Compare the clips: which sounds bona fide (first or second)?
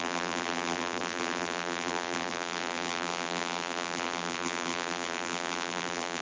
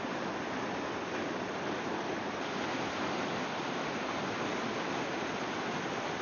second